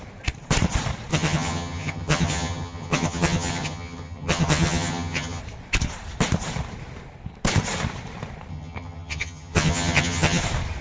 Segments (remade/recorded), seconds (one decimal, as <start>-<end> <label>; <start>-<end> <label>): 0.0-1.1 recorded; 1.1-5.4 remade; 5.4-8.5 recorded; 8.5-10.4 remade; 10.4-10.8 recorded